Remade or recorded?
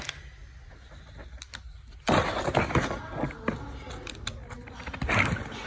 recorded